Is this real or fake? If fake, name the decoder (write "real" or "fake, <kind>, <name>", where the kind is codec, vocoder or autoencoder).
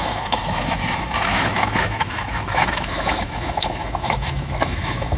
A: fake, autoencoder, DAC-VAE